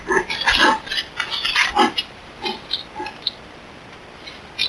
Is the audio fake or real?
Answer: real